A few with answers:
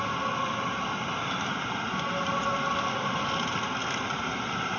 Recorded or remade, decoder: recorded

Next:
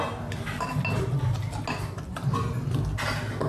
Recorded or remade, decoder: recorded